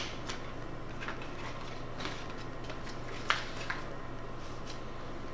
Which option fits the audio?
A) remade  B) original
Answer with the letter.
B